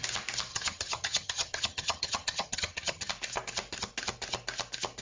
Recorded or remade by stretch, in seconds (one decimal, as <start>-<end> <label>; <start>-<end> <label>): 0.0-0.5 recorded; 0.5-3.1 remade; 3.1-5.0 recorded